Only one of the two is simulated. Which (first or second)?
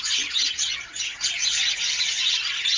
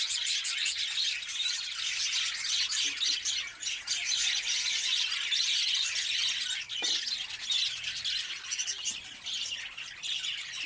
first